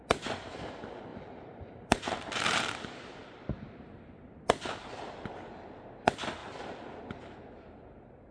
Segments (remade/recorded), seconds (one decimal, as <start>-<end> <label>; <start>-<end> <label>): 0.0-1.1 recorded; 1.1-2.7 remade; 2.7-3.2 recorded; 3.2-3.9 remade; 3.9-6.4 recorded; 6.4-7.0 remade; 7.0-8.3 recorded